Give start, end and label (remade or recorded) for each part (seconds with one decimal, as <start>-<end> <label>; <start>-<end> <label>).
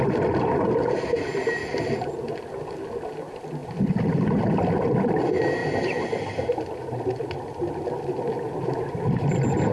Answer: 0.0-1.6 recorded; 1.6-2.1 remade; 2.1-5.6 recorded; 5.6-7.7 remade; 7.7-9.7 recorded